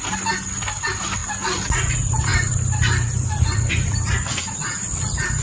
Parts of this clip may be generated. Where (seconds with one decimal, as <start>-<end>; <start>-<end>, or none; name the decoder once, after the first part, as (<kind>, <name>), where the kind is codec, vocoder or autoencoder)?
2.3-4.3 (vocoder, BigVGAN v2)

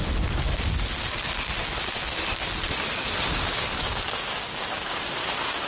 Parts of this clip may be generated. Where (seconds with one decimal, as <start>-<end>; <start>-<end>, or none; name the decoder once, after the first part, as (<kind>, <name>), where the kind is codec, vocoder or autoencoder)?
3.8-4.8 (codec, DAC)

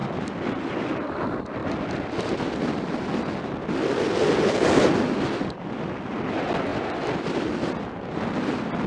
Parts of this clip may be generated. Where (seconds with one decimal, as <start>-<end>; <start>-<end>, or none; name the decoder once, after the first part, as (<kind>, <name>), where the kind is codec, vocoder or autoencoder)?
none

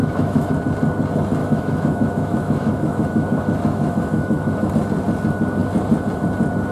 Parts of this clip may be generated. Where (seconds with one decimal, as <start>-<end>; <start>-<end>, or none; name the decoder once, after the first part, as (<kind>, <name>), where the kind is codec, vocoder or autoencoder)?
0.0-0.5 (autoencoder, DAC-VAE); 1.4-4.7